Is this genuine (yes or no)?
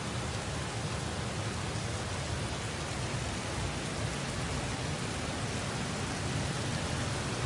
yes